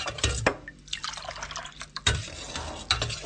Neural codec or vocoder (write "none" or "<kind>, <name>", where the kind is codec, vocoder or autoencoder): none